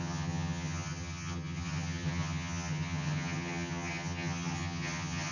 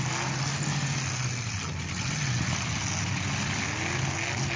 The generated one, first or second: first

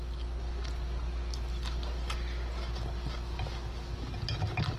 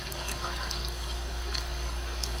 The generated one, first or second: second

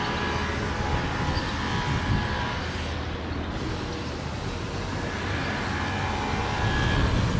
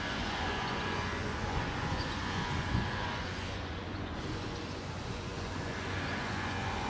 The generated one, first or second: second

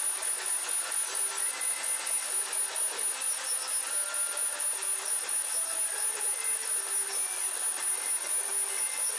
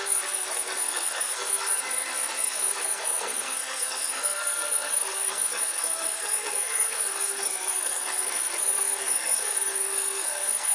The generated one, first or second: second